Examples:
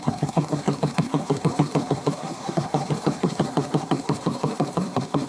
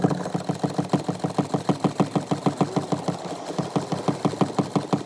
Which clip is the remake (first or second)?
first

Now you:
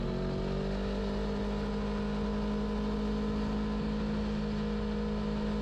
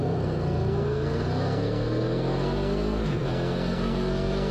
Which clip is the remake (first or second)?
second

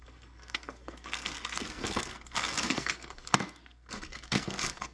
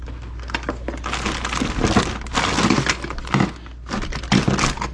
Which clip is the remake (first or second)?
first